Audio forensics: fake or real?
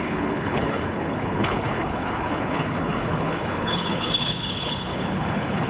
fake